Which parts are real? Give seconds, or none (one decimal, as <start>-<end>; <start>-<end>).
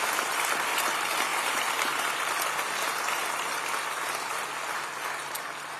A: 0.0-1.3; 2.1-5.8